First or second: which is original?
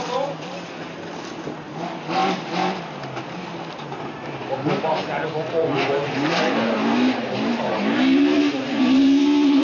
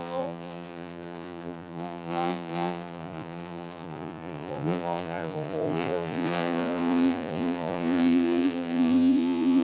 first